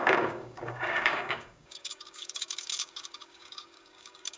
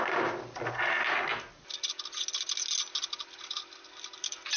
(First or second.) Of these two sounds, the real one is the second